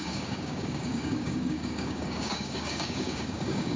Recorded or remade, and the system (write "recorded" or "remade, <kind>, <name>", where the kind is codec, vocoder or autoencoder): remade, codec, DAC